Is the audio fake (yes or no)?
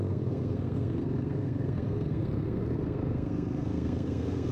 yes